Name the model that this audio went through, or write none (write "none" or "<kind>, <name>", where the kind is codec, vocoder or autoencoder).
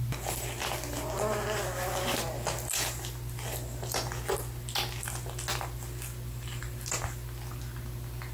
none